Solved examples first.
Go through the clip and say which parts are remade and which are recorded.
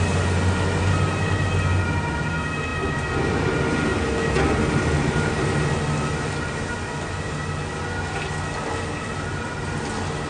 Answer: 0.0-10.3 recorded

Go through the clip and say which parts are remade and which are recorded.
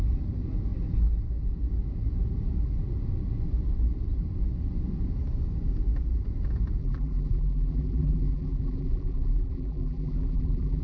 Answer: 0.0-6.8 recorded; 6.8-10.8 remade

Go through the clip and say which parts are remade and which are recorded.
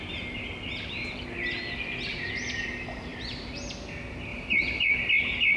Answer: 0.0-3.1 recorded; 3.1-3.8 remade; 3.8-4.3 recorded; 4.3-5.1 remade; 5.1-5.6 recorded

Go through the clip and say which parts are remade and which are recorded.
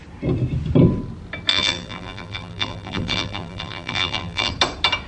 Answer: 0.0-1.5 recorded; 1.5-4.5 remade; 4.5-5.1 recorded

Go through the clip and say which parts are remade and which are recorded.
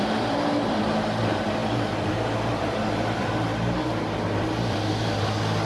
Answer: 0.0-3.5 remade; 3.5-4.6 recorded; 4.6-5.7 remade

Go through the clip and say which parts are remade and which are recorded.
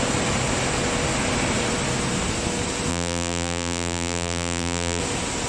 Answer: 0.0-2.9 recorded; 2.9-5.0 remade; 5.0-5.5 recorded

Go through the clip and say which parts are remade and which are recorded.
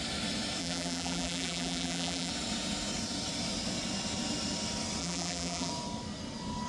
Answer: 0.0-0.6 recorded; 0.6-2.3 remade; 2.3-5.0 recorded; 5.0-5.7 remade; 5.7-6.7 recorded